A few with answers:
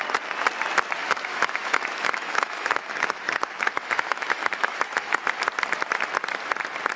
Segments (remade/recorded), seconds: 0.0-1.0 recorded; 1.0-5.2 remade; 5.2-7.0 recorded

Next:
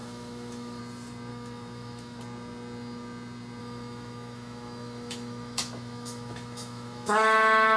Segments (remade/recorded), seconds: 0.0-0.8 remade; 0.8-1.3 recorded; 1.3-2.2 remade; 2.2-3.6 recorded; 3.6-7.8 remade

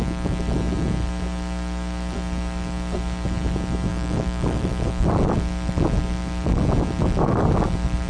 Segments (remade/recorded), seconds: 0.0-3.9 recorded; 3.9-5.1 remade; 5.1-8.1 recorded

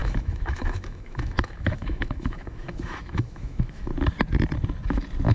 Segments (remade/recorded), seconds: 0.0-3.9 remade; 3.9-5.3 recorded

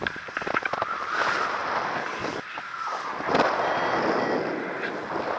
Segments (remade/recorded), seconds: 0.0-5.4 recorded

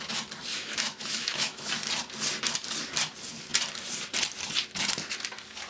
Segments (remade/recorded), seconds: 0.0-0.5 recorded; 0.5-1.7 remade; 1.7-5.7 recorded

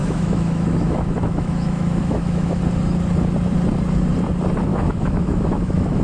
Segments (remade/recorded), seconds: 0.0-2.6 remade; 2.6-4.7 recorded; 4.7-6.0 remade

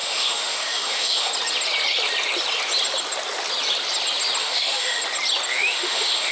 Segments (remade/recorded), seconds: 0.0-1.3 remade; 1.3-4.4 recorded; 4.4-5.0 remade; 5.0-5.5 recorded; 5.5-6.3 remade